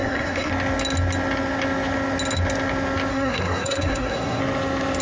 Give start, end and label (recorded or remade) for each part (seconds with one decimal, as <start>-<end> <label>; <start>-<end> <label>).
0.0-0.5 remade; 0.5-3.1 recorded; 3.1-4.4 remade; 4.4-5.0 recorded